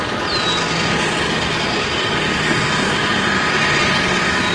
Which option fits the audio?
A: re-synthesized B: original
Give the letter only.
B